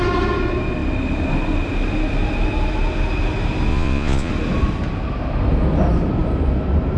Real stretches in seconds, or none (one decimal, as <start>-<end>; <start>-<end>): 0.0-3.7; 4.3-7.0